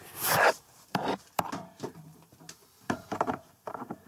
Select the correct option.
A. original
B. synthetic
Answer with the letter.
B